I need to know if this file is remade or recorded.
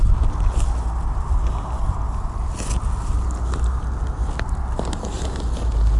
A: recorded